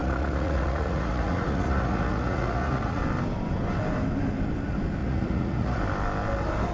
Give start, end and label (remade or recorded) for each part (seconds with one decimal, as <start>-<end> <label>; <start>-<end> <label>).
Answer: 0.0-3.0 remade; 3.0-5.0 recorded; 5.0-5.8 remade; 5.8-6.7 recorded